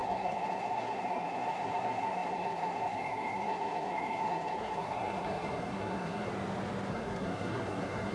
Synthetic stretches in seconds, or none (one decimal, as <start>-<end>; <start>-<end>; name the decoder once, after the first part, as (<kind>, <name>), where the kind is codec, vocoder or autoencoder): 0.0-6.3 (codec, SNAC); 6.9-8.1